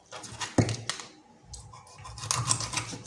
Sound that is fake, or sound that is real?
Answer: real